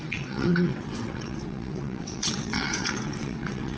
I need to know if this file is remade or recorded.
remade